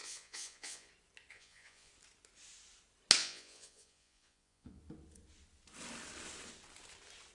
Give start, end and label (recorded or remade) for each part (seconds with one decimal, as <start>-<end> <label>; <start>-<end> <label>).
0.0-0.9 remade; 0.9-1.3 recorded; 1.3-1.9 remade; 1.9-3.2 recorded; 3.2-4.8 remade; 4.8-7.3 recorded